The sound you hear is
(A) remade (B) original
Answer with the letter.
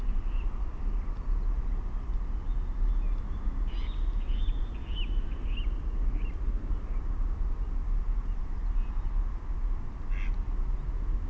B